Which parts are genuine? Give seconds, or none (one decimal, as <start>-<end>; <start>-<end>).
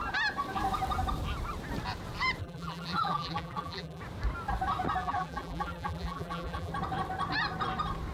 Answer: 0.0-2.4; 4.0-5.0; 6.7-8.1